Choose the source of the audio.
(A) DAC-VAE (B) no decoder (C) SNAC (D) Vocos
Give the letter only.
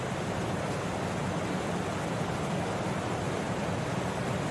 B